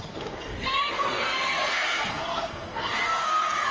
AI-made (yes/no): yes